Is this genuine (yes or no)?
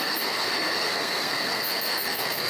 no